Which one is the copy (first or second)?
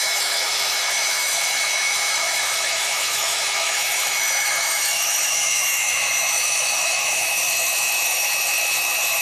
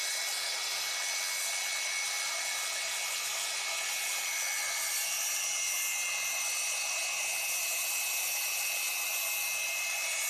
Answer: first